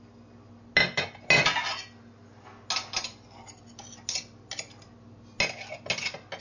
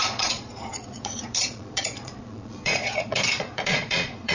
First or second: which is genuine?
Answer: first